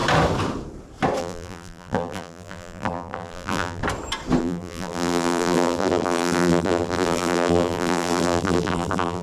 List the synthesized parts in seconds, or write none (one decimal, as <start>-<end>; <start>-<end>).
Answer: 1.2-3.8; 4.4-9.2